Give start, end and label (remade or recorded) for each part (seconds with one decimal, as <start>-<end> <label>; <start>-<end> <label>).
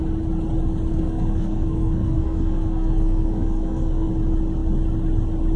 0.0-0.9 recorded; 0.9-4.1 remade; 4.1-5.6 recorded